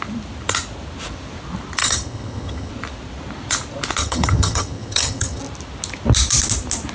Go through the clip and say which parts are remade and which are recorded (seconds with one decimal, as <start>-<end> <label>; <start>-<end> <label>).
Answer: 0.0-1.8 recorded; 1.8-2.7 remade; 2.7-4.0 recorded; 4.0-5.4 remade; 5.4-6.9 recorded